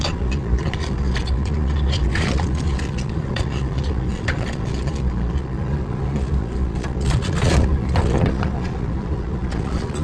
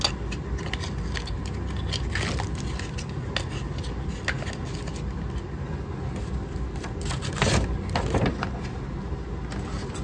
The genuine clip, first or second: second